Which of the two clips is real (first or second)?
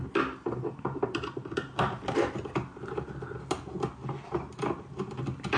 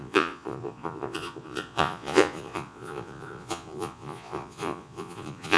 first